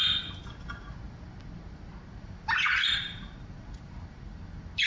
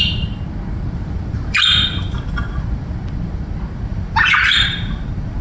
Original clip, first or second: first